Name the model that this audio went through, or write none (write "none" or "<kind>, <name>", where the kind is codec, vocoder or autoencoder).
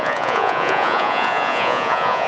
vocoder, Vocos